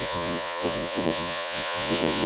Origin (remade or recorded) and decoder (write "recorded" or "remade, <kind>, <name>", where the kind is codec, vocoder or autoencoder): remade, vocoder, Vocos